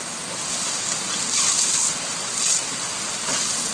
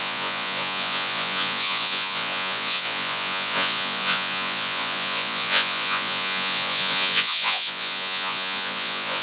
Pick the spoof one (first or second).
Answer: second